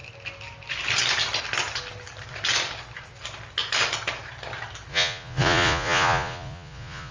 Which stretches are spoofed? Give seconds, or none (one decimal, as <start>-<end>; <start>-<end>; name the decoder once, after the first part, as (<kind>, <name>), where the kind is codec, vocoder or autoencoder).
4.9-7.1 (vocoder, Vocos)